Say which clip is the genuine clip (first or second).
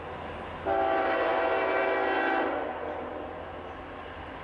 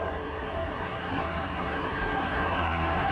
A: first